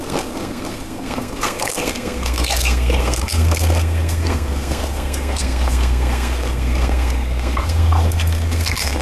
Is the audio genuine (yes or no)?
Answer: no